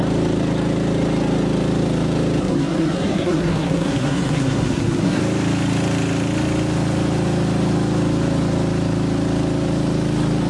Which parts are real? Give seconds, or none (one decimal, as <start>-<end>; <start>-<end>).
0.0-2.4; 5.2-10.5